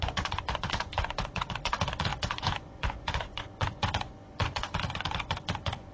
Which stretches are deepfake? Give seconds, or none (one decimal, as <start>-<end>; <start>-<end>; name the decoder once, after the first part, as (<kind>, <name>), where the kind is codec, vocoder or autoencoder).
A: 0.0-5.9 (vocoder, Vocos)